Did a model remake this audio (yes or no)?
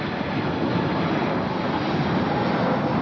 no